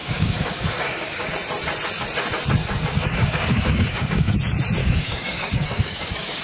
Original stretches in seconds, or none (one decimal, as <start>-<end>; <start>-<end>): 1.3-2.6; 4.3-4.8